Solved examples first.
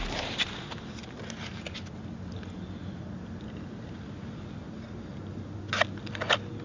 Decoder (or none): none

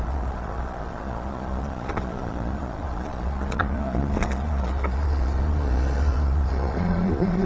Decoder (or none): vocoder, Vocos